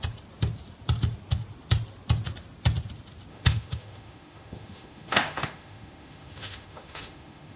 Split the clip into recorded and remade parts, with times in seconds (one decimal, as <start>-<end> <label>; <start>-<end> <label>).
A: 0.0-3.3 recorded; 3.3-7.6 remade